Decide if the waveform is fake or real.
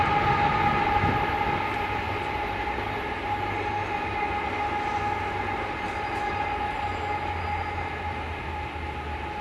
real